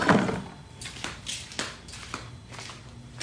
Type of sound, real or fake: real